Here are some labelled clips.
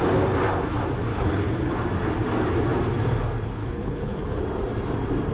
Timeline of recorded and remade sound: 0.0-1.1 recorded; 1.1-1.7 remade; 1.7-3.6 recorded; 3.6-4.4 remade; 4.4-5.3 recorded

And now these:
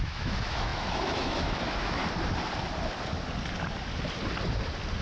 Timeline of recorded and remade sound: 0.0-2.0 remade; 2.0-5.0 recorded

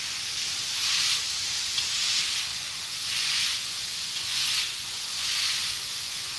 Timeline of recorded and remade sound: 0.0-2.5 recorded; 2.5-6.4 remade